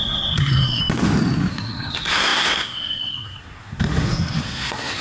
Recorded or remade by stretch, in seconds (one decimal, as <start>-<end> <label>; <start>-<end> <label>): 0.0-0.8 remade; 0.8-1.5 recorded; 1.5-5.0 remade